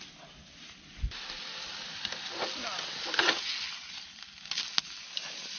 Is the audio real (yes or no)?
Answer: yes